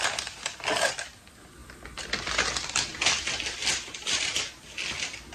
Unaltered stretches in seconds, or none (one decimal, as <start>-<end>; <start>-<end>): 0.0-5.3